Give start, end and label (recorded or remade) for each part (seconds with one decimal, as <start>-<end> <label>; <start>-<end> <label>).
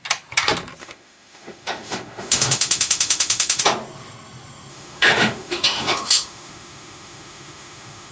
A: 0.0-0.8 recorded; 0.8-3.6 remade; 3.6-4.7 recorded; 4.7-8.1 remade